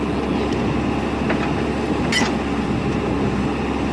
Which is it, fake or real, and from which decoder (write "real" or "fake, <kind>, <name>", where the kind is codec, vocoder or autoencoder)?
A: real